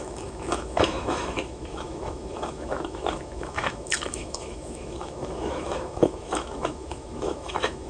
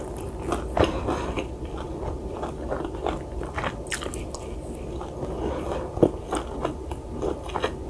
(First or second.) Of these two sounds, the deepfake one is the first